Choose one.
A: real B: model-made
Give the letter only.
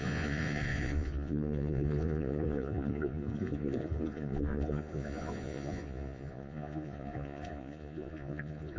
B